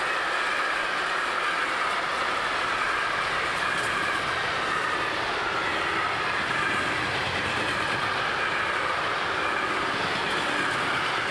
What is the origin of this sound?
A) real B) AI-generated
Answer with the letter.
A